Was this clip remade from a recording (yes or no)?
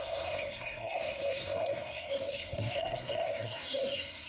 yes